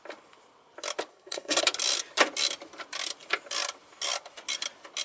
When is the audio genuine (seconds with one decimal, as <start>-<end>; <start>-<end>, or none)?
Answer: 0.0-1.1; 1.6-5.0